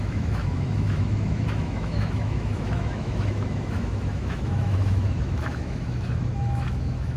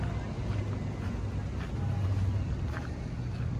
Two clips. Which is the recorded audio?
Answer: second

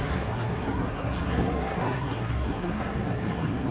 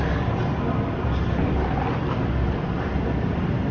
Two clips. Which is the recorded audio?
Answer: second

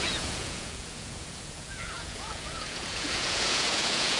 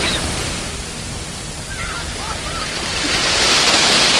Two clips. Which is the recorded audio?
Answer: second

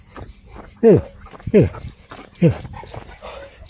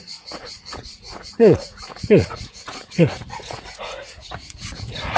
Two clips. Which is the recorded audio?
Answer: first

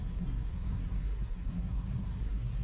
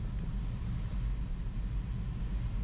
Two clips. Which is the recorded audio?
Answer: second